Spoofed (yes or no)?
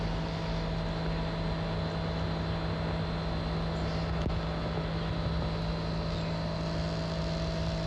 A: no